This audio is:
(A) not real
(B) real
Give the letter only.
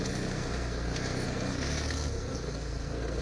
A